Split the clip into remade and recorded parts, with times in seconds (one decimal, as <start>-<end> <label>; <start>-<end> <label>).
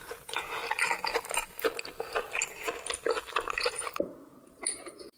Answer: 0.0-0.6 remade; 0.6-3.7 recorded; 3.7-5.2 remade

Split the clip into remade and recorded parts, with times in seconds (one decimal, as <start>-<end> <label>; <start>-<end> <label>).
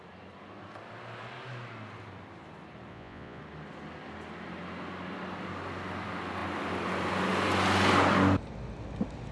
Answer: 0.0-2.9 recorded; 2.9-3.4 remade; 3.4-9.3 recorded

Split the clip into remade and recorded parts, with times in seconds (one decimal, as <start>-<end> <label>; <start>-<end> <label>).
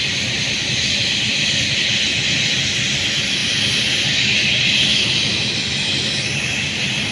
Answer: 0.0-7.1 recorded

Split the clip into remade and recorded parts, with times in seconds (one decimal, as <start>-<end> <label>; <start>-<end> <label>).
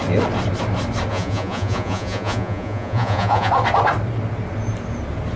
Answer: 0.0-1.1 recorded; 1.1-3.5 remade; 3.5-5.4 recorded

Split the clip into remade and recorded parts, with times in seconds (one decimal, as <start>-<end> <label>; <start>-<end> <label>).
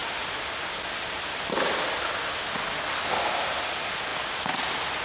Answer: 0.0-5.0 recorded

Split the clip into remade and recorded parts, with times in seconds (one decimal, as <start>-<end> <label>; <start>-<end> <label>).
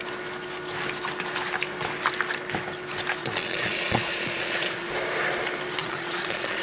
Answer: 0.0-3.2 recorded; 3.2-4.9 remade; 4.9-5.8 recorded; 5.8-6.6 remade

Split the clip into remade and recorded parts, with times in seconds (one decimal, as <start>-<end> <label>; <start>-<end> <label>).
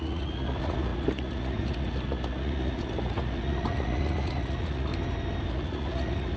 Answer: 0.0-4.9 remade; 4.9-5.5 recorded; 5.5-6.4 remade